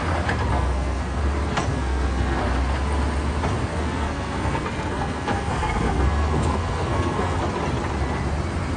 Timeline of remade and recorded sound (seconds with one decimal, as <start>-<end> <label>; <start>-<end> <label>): 0.0-0.5 recorded; 0.5-1.2 remade; 1.2-1.7 recorded; 1.7-2.4 remade; 2.4-3.7 recorded; 3.7-7.4 remade; 7.4-8.8 recorded